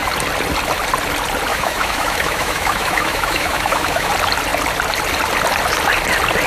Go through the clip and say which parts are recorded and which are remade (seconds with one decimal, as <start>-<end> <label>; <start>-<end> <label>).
0.0-1.5 recorded; 1.5-4.1 remade; 4.1-6.5 recorded